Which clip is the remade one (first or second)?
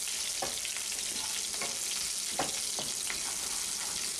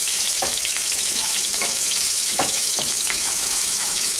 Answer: second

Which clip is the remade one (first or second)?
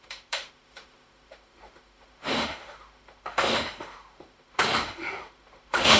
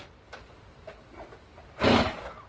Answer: first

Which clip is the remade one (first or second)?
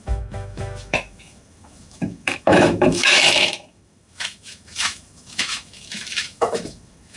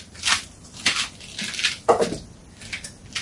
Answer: first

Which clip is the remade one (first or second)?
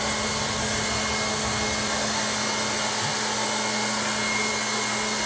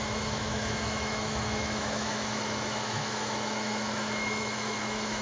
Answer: second